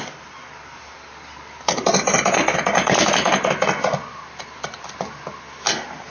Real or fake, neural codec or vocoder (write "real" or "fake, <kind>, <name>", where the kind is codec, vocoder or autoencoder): real